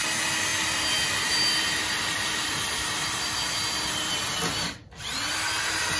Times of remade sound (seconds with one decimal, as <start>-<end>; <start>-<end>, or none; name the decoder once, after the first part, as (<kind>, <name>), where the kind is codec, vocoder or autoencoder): 0.5-4.1 (vocoder, BigVGAN v2); 4.8-6.0